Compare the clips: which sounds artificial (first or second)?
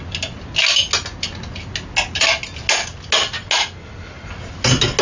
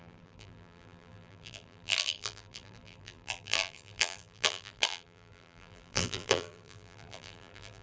second